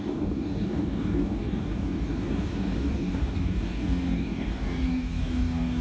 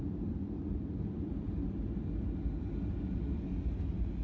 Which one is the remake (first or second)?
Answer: first